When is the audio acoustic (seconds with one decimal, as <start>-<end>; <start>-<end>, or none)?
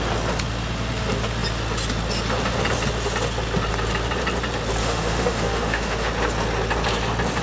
0.0-4.8; 6.1-7.4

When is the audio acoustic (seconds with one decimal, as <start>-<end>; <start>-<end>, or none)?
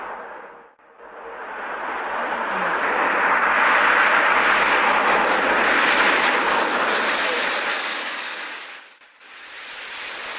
0.0-7.7; 8.6-10.4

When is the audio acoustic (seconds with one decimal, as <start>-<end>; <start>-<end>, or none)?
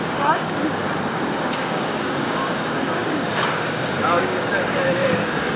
0.8-1.4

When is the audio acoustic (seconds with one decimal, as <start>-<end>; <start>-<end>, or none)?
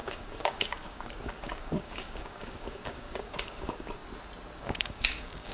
4.0-4.6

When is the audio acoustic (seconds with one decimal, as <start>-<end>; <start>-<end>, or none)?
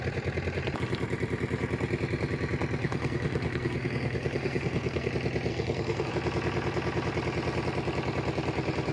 0.0-2.8; 5.1-5.5; 6.1-8.9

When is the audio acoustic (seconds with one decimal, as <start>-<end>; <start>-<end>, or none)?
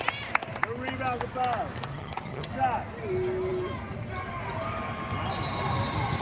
0.0-1.9; 2.5-6.2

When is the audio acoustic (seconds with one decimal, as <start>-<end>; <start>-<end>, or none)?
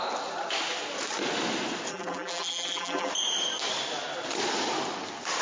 0.0-1.9; 3.1-5.4